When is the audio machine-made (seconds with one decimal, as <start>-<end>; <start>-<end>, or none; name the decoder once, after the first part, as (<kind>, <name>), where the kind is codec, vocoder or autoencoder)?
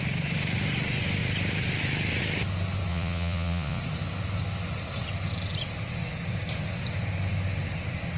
2.9-3.8 (vocoder, Vocos)